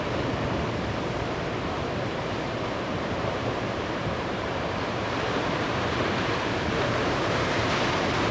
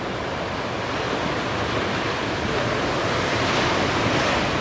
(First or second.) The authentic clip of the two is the second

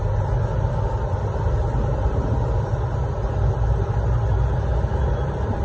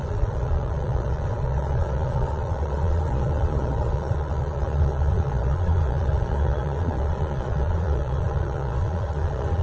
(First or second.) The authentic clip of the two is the first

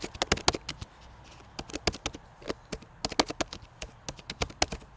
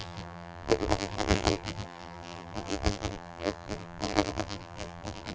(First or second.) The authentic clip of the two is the first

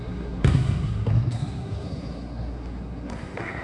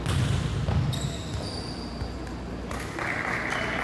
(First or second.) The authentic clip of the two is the second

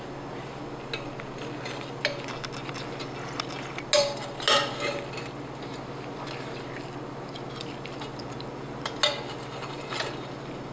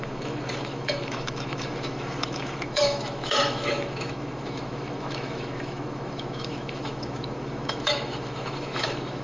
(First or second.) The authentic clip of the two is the first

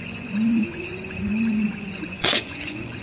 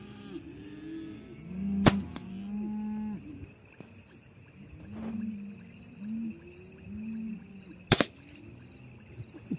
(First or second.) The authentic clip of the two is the second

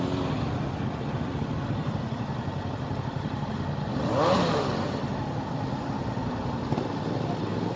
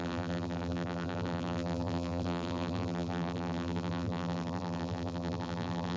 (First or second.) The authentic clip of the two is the first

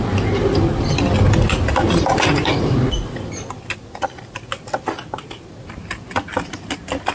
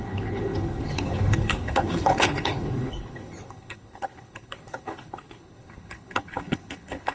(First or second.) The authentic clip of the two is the first